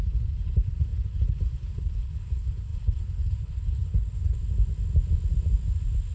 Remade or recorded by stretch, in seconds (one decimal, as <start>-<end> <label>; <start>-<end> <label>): 0.0-4.4 remade; 4.4-6.1 recorded